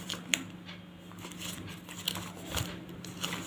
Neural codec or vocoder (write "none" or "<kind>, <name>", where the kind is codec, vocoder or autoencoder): none